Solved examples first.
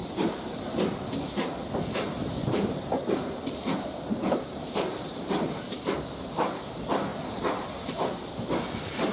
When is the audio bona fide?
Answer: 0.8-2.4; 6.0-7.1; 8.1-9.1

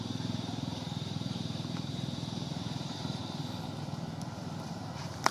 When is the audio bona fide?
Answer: 3.2-4.4

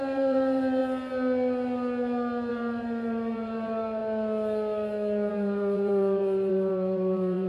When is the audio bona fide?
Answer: 0.8-2.5; 4.0-5.3